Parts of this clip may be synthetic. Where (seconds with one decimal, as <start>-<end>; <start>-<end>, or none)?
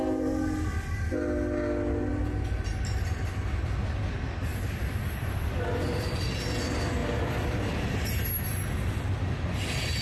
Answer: none